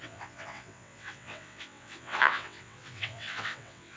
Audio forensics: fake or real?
fake